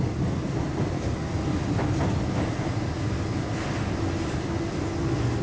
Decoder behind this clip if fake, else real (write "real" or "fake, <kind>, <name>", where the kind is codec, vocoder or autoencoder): real